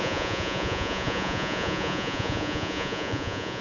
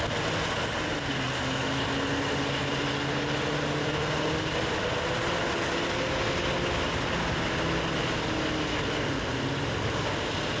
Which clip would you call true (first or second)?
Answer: second